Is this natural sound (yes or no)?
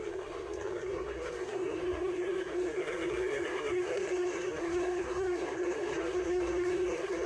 no